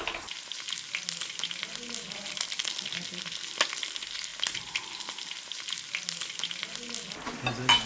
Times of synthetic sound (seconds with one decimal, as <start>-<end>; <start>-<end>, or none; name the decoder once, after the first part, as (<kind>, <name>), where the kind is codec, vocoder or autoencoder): 4.3-5.0 (vocoder, BigVGAN v2)